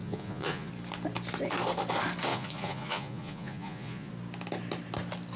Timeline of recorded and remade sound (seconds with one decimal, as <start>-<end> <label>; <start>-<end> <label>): 0.0-0.7 remade; 0.7-2.3 recorded; 2.3-4.1 remade; 4.1-5.4 recorded